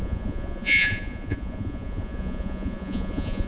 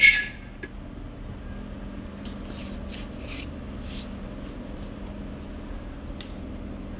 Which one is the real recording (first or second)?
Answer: second